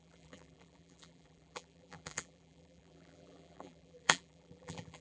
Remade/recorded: remade